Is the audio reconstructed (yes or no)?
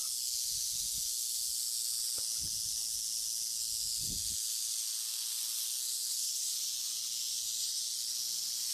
no